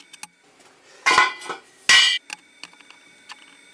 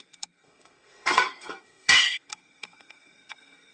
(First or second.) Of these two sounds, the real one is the first